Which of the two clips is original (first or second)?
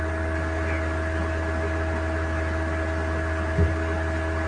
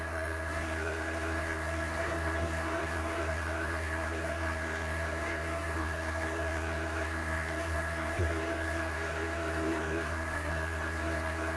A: first